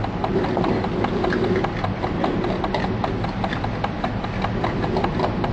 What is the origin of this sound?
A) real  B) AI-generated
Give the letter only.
A